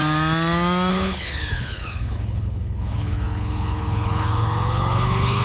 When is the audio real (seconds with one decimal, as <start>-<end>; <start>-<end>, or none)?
0.0-0.9